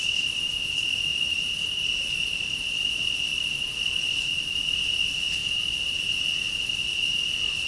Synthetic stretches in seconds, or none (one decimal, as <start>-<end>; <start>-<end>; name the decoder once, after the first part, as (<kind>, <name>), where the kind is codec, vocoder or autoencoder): 0.0-3.3 (vocoder, BigVGAN v2); 4.0-5.4; 6.5-7.7